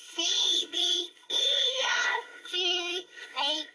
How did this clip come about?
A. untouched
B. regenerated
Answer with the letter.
B